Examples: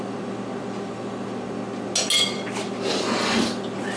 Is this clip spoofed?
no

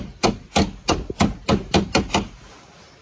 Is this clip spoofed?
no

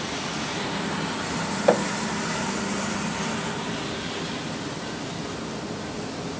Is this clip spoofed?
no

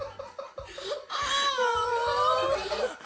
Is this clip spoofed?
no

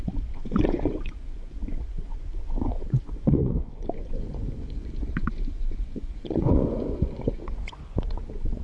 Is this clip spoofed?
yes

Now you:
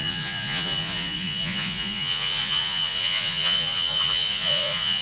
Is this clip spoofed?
yes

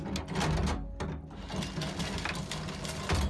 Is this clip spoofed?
no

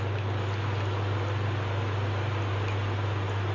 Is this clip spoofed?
no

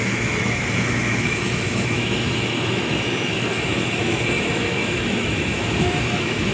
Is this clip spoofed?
yes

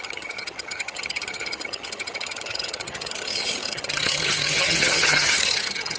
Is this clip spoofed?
yes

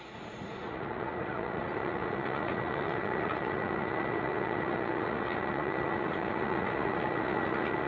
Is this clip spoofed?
yes